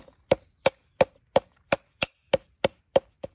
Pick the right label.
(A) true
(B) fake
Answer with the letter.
A